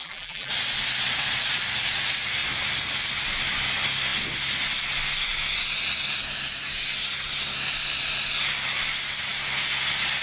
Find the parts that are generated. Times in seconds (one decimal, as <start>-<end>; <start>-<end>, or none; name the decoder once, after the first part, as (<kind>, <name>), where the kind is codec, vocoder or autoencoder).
0.0-0.5 (vocoder, BigVGAN v2)